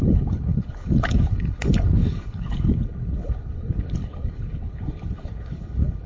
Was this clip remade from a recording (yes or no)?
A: yes